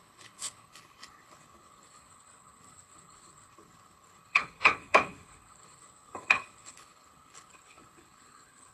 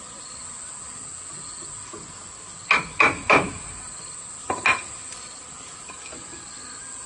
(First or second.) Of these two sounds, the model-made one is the first